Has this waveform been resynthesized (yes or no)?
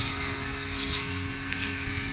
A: yes